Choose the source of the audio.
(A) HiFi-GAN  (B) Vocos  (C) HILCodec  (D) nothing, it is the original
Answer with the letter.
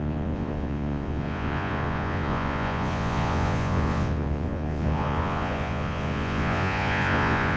B